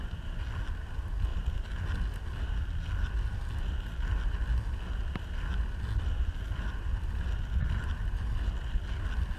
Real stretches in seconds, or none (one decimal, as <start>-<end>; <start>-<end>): 0.0-9.4